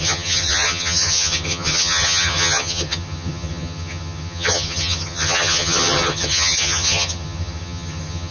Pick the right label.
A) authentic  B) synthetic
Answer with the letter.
B